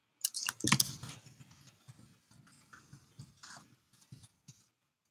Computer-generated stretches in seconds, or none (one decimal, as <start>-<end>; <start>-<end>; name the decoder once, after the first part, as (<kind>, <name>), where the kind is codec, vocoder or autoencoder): none